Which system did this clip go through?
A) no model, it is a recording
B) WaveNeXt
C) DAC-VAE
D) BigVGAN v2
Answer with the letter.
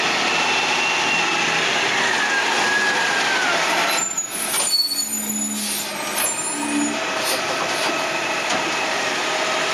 A